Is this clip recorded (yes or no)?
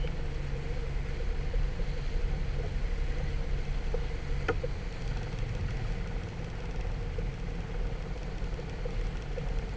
yes